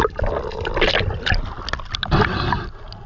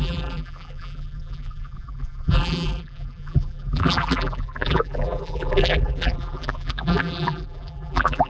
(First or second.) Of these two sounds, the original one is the first